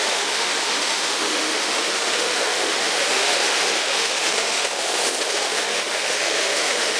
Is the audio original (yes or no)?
no